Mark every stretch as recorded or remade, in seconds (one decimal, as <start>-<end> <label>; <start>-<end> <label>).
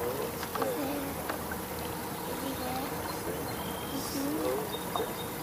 0.0-0.5 recorded; 0.5-3.7 remade; 3.7-5.4 recorded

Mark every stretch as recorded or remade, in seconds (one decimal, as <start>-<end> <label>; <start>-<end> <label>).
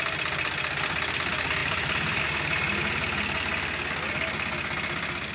0.0-1.6 recorded; 1.6-2.2 remade; 2.2-5.3 recorded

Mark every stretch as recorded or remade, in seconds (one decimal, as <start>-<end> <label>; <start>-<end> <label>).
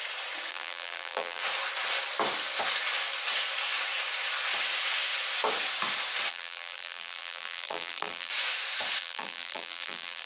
0.0-0.5 recorded; 0.5-1.4 remade; 1.4-6.3 recorded; 6.3-8.3 remade; 8.3-9.0 recorded; 9.0-10.3 remade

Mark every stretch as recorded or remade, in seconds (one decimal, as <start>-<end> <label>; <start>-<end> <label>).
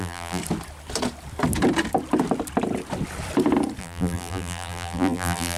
0.0-0.4 remade; 0.4-3.8 recorded; 3.8-5.6 remade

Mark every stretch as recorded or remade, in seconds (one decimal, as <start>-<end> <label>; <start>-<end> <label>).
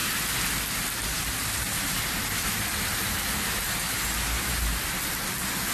0.0-5.7 recorded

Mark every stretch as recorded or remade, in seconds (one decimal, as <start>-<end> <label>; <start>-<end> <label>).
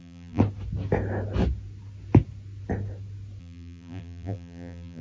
0.0-0.4 remade; 0.4-3.4 recorded; 3.4-5.0 remade